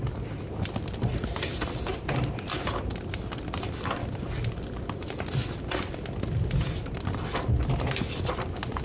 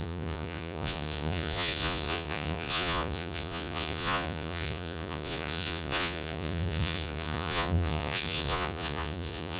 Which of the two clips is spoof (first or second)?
second